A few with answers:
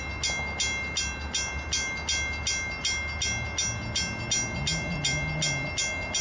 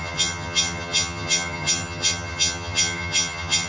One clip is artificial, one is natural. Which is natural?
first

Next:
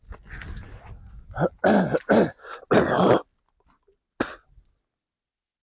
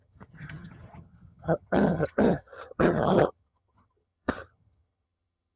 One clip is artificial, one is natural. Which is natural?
first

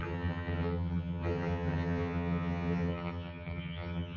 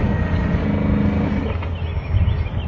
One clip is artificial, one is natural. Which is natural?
second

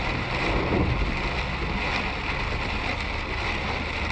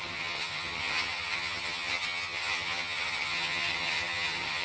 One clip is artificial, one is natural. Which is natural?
first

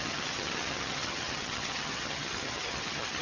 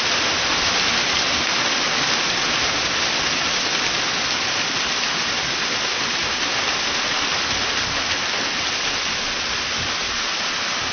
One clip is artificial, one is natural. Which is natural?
second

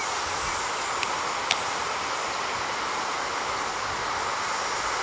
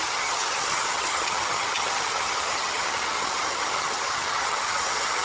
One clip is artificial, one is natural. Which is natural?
first